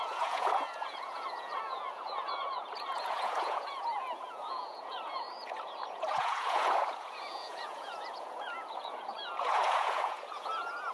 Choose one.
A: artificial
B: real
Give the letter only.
A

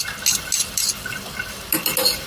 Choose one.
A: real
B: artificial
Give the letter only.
A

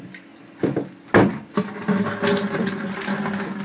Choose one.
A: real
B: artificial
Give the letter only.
A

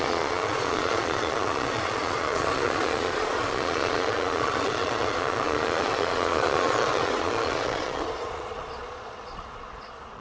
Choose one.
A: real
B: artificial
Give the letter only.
B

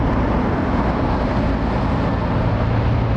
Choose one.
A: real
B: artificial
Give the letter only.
A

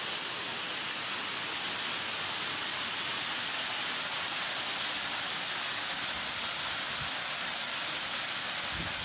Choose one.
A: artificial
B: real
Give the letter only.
B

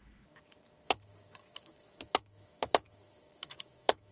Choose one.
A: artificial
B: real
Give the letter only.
A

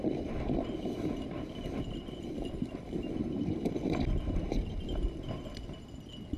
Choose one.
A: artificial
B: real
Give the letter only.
B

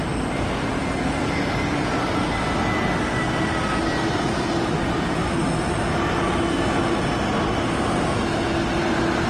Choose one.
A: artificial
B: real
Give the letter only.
B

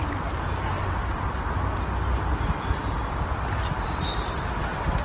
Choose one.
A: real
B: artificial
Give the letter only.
A